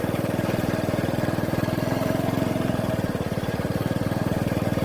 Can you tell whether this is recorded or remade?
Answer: remade